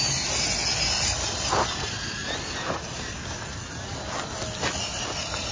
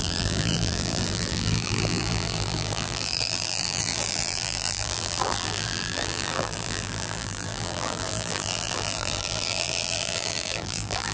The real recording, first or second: first